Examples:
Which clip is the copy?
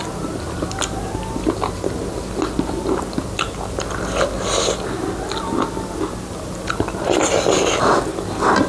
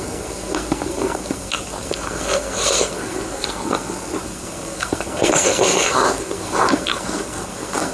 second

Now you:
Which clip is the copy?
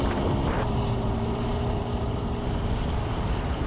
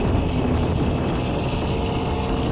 first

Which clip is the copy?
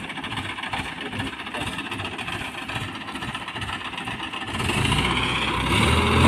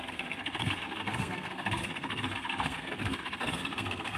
second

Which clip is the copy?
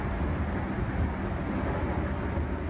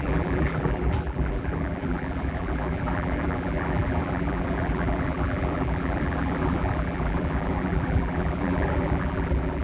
second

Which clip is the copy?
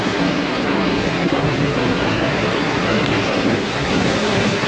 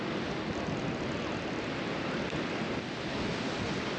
first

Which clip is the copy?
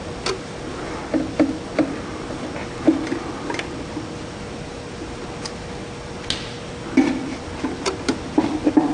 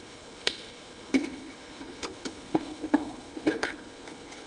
second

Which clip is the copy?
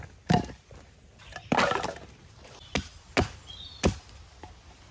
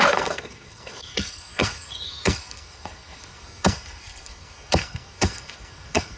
second